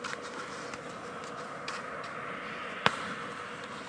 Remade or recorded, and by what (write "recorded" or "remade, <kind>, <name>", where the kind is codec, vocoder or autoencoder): recorded